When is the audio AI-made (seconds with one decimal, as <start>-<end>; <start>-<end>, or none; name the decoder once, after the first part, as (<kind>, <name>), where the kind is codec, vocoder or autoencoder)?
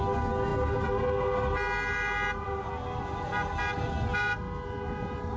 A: none